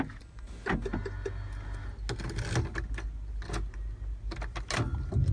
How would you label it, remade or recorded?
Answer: recorded